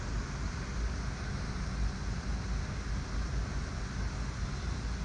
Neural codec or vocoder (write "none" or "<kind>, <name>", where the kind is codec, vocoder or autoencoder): none